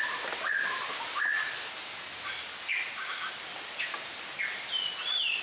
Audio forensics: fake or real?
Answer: real